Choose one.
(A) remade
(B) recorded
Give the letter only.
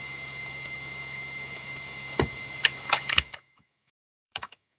A